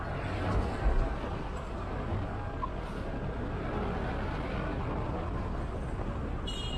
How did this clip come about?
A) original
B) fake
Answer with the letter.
A